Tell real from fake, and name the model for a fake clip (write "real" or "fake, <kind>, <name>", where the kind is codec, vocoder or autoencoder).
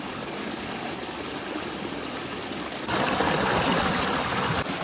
real